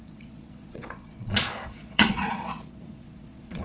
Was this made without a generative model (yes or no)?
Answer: no